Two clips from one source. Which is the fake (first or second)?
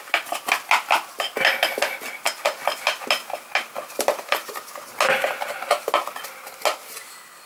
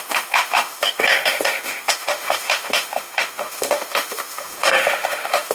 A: second